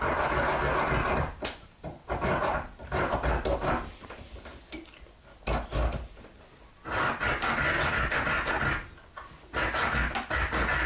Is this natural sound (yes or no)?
yes